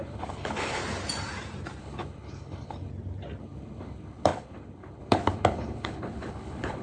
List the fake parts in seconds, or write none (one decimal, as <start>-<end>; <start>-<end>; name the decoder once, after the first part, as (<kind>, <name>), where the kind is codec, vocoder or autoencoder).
0.0-0.8 (codec, HILCodec); 1.8-2.9; 3.4-6.8